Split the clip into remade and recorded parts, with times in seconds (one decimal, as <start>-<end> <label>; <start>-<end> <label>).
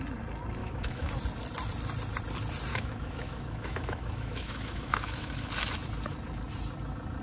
0.0-0.6 recorded; 0.6-1.1 remade; 1.1-2.7 recorded; 2.7-5.5 remade; 5.5-7.2 recorded